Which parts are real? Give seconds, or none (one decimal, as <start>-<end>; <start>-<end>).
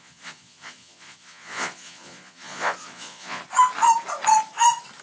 3.4-5.0